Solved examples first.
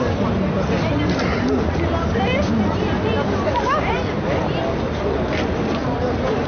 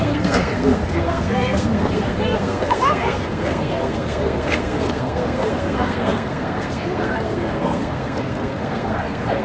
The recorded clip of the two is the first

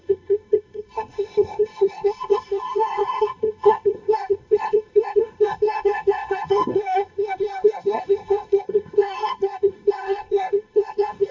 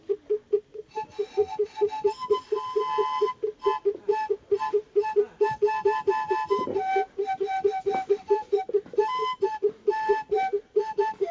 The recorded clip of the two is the second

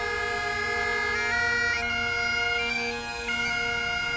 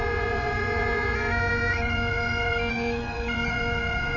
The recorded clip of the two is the first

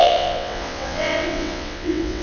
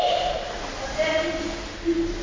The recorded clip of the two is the second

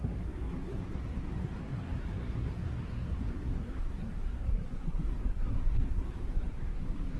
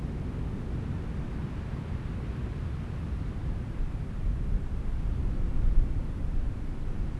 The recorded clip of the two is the second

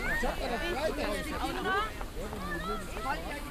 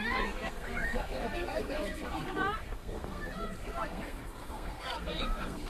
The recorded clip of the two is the first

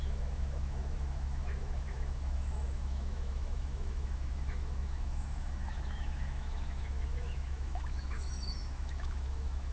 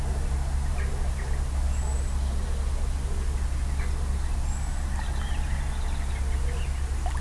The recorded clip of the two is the second